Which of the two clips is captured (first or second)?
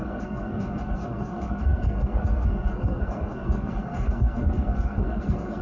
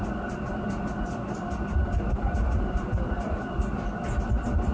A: second